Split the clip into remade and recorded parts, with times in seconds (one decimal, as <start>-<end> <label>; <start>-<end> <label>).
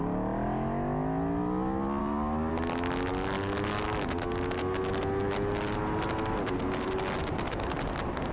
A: 0.0-2.0 recorded; 2.0-2.5 remade; 2.5-8.3 recorded